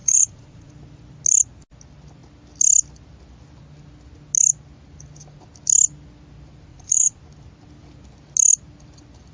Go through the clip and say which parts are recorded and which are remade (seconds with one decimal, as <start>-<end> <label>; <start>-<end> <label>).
0.0-0.7 remade; 0.7-6.7 recorded; 6.7-7.2 remade; 7.2-9.3 recorded

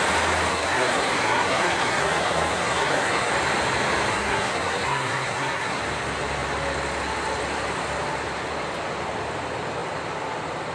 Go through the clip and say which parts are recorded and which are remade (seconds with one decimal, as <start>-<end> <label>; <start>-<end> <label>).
0.0-0.5 recorded; 0.5-3.3 remade; 3.3-4.1 recorded; 4.1-5.8 remade; 5.8-10.7 recorded

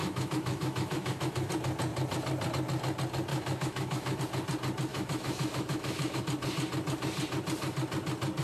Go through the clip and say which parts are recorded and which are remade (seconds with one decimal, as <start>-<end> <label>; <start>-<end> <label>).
0.0-1.5 remade; 1.5-3.3 recorded; 3.3-4.2 remade; 4.2-4.9 recorded; 4.9-6.2 remade; 6.2-8.4 recorded

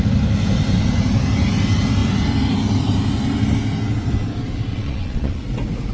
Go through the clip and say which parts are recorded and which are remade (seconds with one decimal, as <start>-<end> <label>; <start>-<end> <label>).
0.0-4.7 recorded; 4.7-5.4 remade; 5.4-5.9 recorded

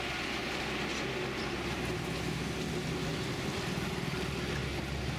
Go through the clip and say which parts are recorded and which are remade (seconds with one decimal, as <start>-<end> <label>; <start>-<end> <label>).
0.0-5.2 recorded